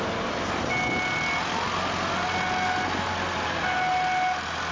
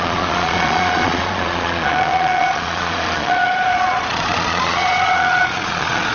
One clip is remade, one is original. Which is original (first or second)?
first